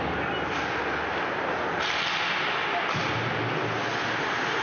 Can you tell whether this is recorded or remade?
recorded